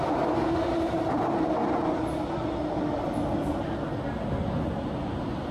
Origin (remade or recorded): recorded